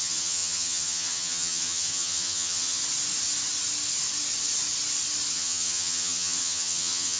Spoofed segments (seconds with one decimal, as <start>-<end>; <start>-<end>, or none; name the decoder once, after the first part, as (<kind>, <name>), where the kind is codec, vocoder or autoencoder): 0.0-2.8 (vocoder, HiFi-GAN); 5.3-7.2